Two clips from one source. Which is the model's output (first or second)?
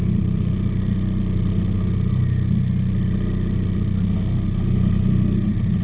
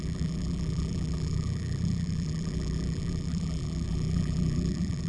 second